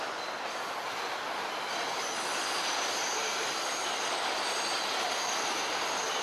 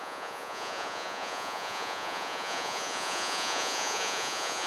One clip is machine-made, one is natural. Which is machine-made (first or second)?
second